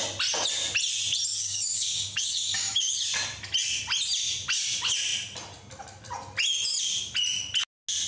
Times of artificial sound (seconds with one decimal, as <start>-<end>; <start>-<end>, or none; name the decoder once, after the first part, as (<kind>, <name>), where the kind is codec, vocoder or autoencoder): 1.3-3.1 (codec, DAC)

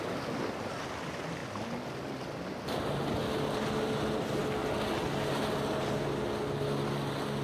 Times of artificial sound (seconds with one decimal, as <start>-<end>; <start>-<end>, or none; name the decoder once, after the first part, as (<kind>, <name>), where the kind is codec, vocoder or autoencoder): none